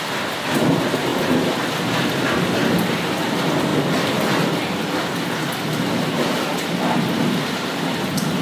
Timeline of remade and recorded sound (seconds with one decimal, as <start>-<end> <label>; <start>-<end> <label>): 0.0-8.4 recorded